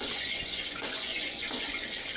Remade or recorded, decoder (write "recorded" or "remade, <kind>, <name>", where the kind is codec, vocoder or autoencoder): remade, vocoder, Vocos